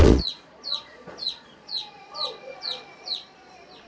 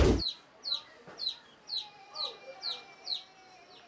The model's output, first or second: first